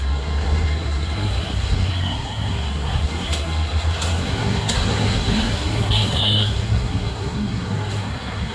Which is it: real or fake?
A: fake